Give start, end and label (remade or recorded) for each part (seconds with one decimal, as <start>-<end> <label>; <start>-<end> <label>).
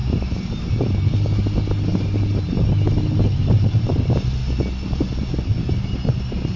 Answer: 0.0-0.9 remade; 0.9-6.6 recorded